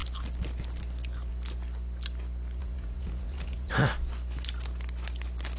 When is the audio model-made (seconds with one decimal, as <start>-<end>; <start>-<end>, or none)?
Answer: 2.6-3.7